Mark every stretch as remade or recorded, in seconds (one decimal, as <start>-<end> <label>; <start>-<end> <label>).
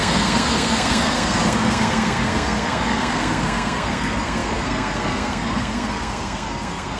0.0-7.0 remade